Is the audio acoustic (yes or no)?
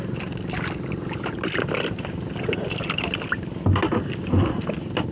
yes